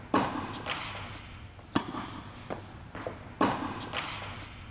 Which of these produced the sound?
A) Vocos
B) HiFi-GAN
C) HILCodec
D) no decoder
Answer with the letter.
D